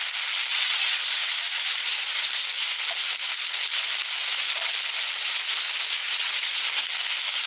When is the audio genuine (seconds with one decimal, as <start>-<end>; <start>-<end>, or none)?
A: 0.0-0.5; 2.3-6.0; 6.6-7.5